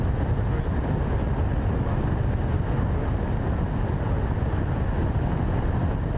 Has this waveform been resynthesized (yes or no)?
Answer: no